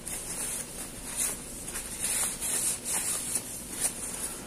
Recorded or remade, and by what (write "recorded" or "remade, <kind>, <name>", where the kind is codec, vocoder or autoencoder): remade, vocoder, BigVGAN v2